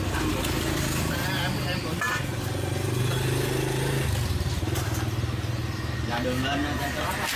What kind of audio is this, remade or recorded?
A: recorded